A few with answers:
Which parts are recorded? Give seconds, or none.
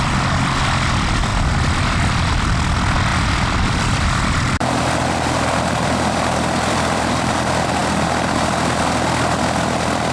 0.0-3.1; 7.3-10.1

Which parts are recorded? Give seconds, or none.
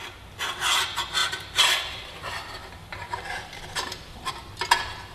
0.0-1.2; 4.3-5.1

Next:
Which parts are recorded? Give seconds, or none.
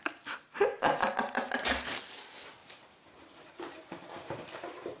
0.0-2.6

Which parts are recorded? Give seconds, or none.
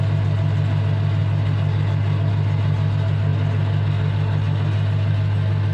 0.0-5.7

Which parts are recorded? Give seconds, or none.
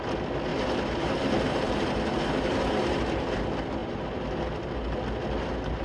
0.0-0.5; 3.4-3.8; 4.4-5.8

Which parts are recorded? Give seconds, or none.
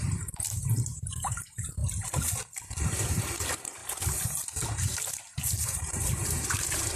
1.8-2.8; 3.8-5.4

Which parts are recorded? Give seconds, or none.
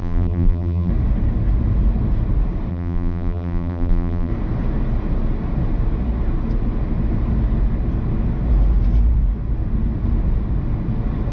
0.9-2.7; 4.3-11.3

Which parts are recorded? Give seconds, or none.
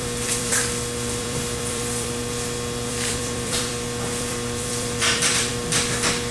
0.6-1.2; 2.2-2.9; 5.5-6.3